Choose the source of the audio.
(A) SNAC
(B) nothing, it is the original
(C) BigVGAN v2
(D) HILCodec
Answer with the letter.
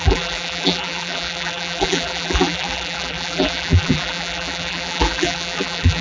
C